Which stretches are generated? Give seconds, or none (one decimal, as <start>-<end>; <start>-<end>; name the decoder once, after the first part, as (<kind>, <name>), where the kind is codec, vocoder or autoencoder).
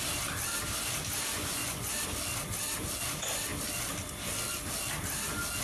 1.3-1.9 (vocoder, Vocos)